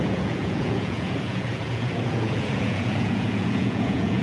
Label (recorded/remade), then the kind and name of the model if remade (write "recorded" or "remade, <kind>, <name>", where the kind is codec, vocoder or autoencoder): remade, vocoder, Vocos